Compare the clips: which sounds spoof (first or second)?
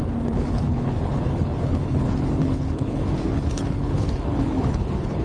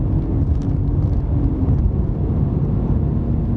first